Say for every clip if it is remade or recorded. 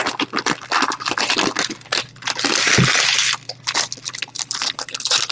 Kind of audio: recorded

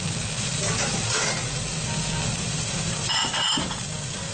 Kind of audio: recorded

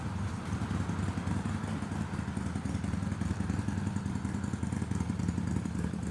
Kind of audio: recorded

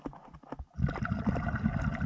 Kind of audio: recorded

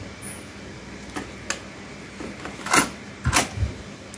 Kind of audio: recorded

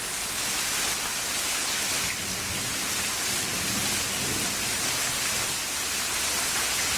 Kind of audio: recorded